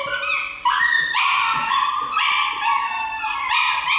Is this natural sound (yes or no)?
yes